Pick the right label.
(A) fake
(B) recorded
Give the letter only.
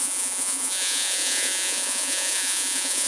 A